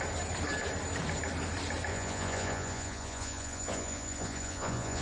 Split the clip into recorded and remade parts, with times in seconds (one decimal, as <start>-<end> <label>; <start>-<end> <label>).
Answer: 0.0-1.9 recorded; 1.9-5.0 remade